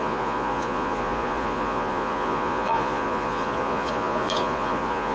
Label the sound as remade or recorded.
remade